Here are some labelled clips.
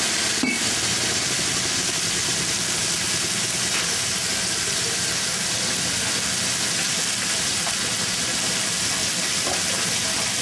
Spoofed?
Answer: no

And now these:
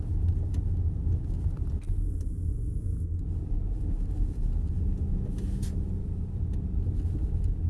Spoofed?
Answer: no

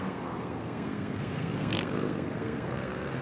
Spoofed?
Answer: yes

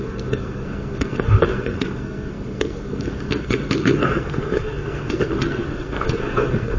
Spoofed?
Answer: yes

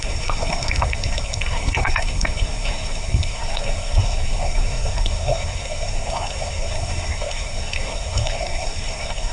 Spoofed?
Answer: yes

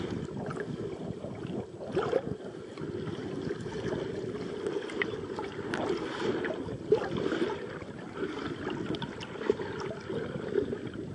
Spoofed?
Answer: no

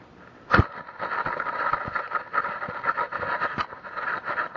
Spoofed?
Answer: no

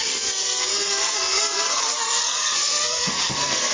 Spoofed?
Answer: yes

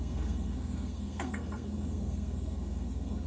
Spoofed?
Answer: yes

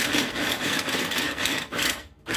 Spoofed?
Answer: yes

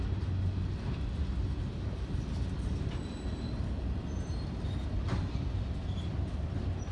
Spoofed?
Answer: no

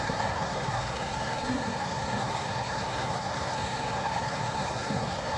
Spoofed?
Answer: yes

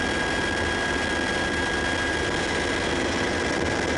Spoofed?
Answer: no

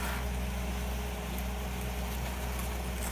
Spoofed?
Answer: no